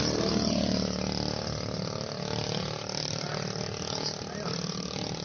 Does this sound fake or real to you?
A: real